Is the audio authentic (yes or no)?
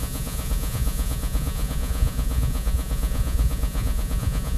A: no